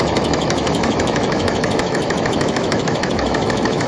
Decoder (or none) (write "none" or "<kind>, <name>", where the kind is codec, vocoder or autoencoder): autoencoder, DAC-VAE